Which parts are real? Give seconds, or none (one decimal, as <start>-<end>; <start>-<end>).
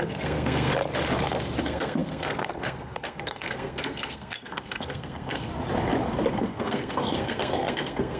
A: 0.7-1.6; 5.5-6.3